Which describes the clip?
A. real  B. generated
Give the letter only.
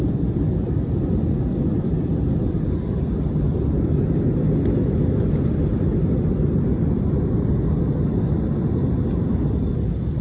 B